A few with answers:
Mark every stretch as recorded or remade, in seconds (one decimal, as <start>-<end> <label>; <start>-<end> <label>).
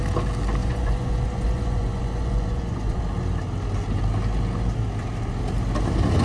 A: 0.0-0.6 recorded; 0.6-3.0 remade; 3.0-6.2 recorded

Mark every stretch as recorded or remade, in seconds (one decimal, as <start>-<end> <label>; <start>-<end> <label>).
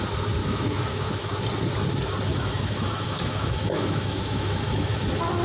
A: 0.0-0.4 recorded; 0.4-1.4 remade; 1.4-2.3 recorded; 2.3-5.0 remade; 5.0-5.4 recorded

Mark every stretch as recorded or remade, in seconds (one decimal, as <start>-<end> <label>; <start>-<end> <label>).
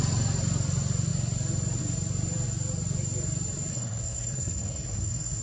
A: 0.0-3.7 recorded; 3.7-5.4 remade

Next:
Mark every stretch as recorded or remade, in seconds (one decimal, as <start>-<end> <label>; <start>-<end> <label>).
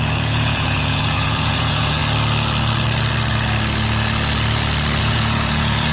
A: 0.0-2.0 remade; 2.0-5.0 recorded; 5.0-5.9 remade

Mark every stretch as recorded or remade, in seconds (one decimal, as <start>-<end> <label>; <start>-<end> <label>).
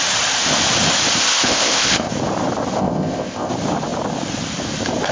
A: 0.0-1.2 recorded; 1.2-2.1 remade; 2.1-2.8 recorded; 2.8-3.5 remade; 3.5-5.1 recorded